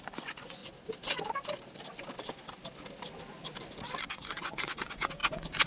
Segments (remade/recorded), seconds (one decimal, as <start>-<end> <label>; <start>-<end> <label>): 0.0-0.6 remade; 0.6-4.0 recorded; 4.0-5.7 remade